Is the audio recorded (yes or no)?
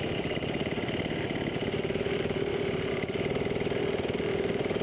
no